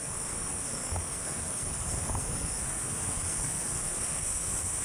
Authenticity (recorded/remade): remade